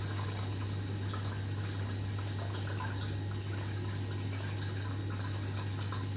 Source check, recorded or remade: recorded